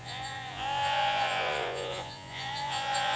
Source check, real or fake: fake